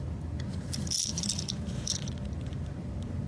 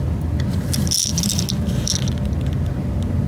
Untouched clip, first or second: second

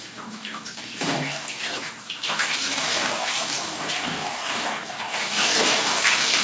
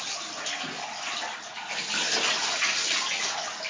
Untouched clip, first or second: second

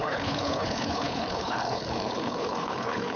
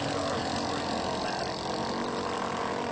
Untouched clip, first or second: second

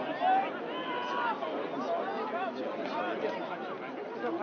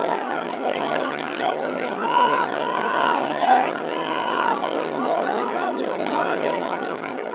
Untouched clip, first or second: first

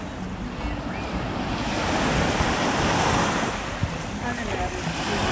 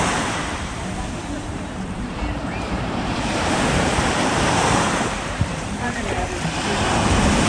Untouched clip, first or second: first